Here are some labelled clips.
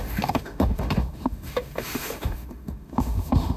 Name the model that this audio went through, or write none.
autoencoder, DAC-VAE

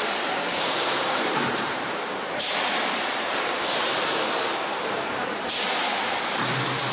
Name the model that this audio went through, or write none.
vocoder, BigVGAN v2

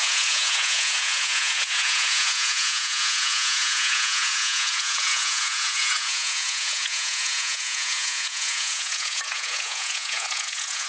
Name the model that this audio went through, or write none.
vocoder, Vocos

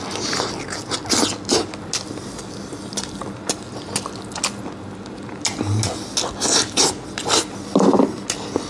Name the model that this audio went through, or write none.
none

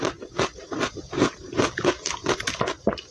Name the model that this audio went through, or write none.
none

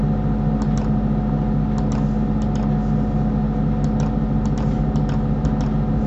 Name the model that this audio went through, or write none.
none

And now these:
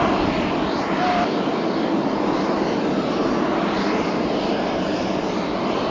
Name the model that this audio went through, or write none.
none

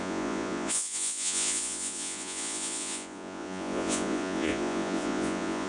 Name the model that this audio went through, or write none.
vocoder, Vocos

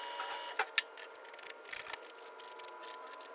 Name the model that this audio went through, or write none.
none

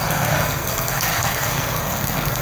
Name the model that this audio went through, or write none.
codec, SNAC